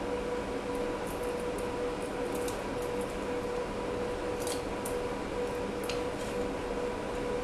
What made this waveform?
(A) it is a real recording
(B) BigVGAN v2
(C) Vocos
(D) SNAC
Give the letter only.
A